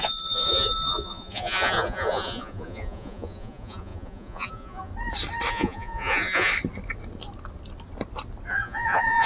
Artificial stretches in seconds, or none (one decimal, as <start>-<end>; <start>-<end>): 0.0-4.9; 5.5-6.5; 8.5-9.3